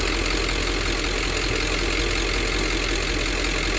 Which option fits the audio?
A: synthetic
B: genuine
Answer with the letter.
B